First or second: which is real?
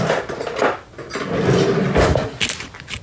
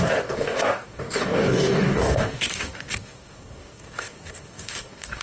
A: first